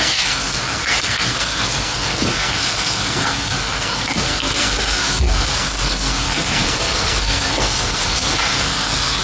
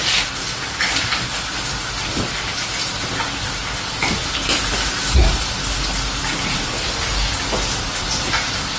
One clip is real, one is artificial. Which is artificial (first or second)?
first